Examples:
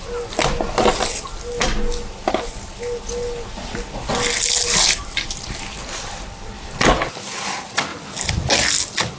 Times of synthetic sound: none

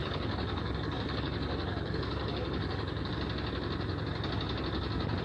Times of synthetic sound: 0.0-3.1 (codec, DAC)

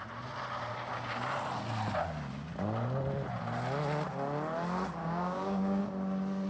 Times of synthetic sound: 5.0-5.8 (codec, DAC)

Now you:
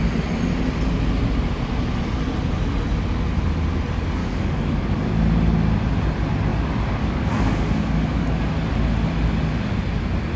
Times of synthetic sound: 4.2-5.0 (codec, DAC); 6.5-8.5